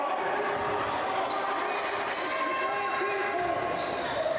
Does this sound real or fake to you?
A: real